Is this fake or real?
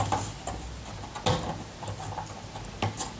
real